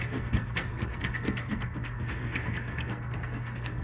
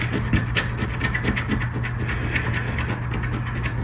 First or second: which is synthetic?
first